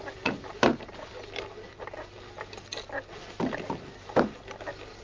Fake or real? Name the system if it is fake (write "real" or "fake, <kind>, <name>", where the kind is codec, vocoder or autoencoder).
real